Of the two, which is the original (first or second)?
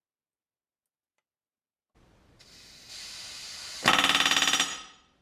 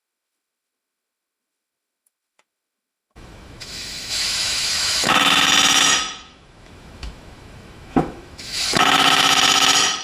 first